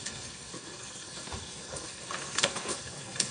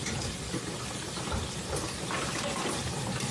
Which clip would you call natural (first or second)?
second